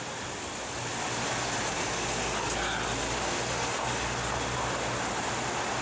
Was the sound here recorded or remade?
recorded